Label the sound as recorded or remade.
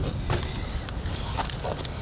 recorded